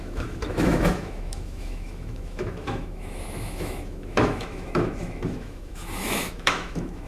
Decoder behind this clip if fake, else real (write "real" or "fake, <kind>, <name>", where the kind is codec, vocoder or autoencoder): fake, autoencoder, DAC-VAE